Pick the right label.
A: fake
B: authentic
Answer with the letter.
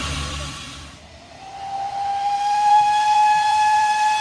A